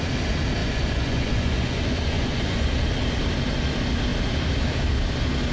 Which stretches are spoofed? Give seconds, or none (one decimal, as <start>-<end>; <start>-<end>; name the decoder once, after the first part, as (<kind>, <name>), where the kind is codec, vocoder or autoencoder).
0.6-2.7 (vocoder, Vocos)